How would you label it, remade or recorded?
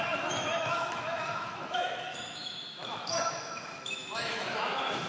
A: remade